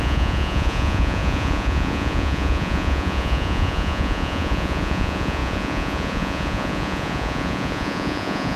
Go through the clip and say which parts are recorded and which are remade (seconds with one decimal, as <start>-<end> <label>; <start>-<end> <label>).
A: 0.0-8.6 remade

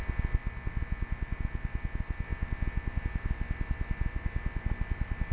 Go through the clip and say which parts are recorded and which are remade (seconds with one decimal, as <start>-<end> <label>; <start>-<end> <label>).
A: 0.0-5.3 recorded

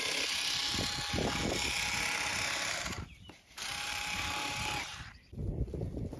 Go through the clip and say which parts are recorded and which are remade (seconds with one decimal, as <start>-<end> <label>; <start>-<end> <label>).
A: 0.0-2.3 recorded; 2.3-5.1 remade; 5.1-6.2 recorded

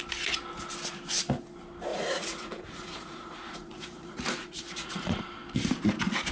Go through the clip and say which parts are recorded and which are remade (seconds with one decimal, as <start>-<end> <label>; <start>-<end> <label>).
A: 0.0-1.9 recorded; 1.9-5.2 remade; 5.2-6.3 recorded

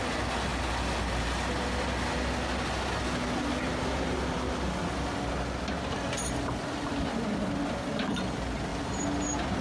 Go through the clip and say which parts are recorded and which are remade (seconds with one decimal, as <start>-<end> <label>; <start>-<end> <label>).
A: 0.0-9.6 recorded

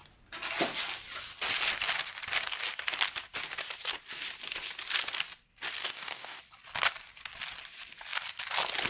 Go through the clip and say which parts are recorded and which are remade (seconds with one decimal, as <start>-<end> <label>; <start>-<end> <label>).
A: 0.0-5.8 recorded; 5.8-6.4 remade; 6.4-8.9 recorded